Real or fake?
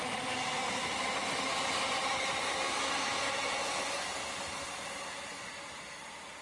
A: real